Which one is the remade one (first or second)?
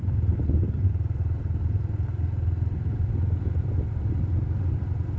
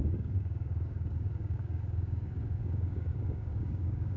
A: second